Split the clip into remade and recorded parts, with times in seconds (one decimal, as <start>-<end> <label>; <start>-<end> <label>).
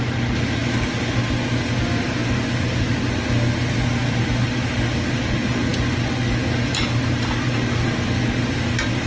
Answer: 0.0-9.1 recorded